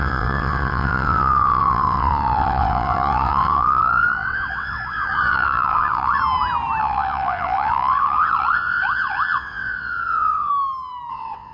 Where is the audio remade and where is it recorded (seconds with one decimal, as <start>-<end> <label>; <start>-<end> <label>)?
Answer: 0.0-6.2 remade; 6.2-6.8 recorded; 6.8-10.5 remade; 10.5-11.1 recorded; 11.1-11.5 remade